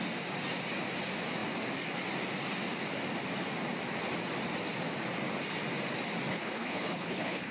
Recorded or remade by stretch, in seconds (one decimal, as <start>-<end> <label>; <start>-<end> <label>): 0.0-6.3 recorded; 6.3-7.5 remade